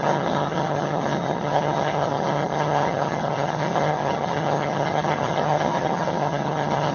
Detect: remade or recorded remade